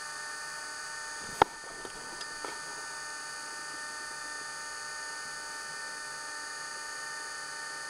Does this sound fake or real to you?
real